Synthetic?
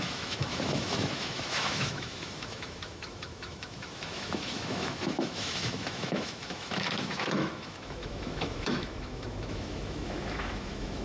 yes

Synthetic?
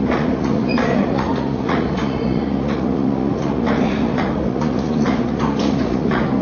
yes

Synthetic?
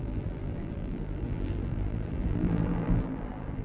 yes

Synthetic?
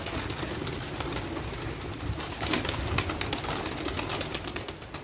no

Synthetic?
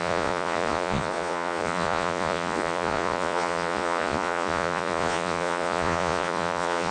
yes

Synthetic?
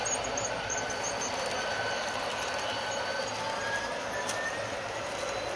no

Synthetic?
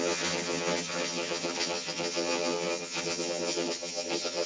yes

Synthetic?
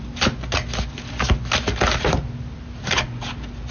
no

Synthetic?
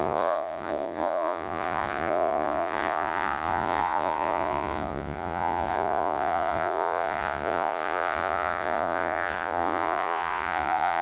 yes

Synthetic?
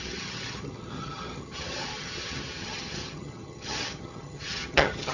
yes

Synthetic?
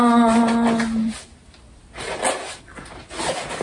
no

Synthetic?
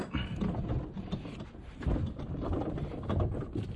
no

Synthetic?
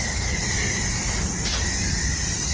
no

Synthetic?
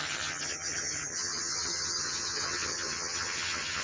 yes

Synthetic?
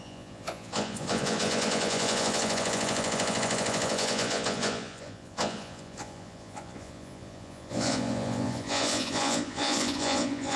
yes